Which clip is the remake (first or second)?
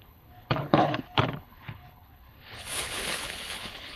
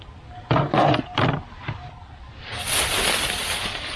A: first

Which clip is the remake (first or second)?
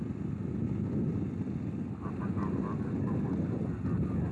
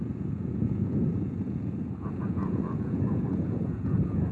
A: second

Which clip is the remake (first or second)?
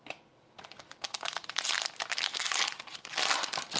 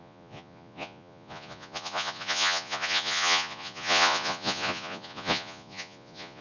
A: second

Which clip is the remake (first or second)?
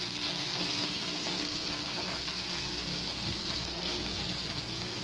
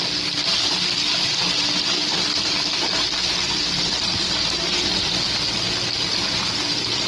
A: first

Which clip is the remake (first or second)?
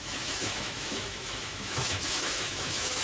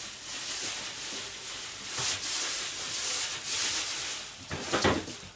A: first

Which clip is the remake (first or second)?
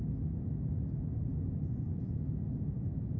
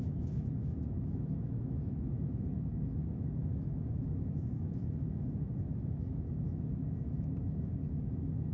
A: second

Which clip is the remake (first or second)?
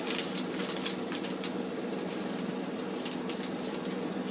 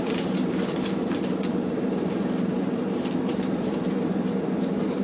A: second